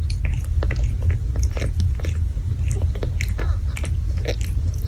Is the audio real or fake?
real